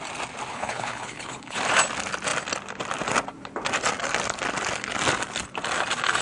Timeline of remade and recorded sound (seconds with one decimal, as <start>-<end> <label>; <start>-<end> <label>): 0.0-0.5 recorded; 0.5-1.6 remade; 1.6-6.2 recorded